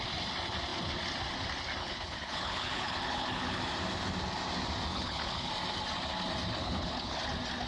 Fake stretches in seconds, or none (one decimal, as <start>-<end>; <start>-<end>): 1.8-3.6; 4.9-5.5; 6.6-7.2